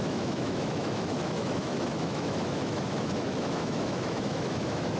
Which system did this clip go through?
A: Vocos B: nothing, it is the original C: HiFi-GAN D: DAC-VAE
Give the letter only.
D